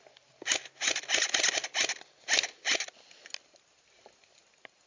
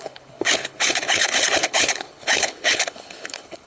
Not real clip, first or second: second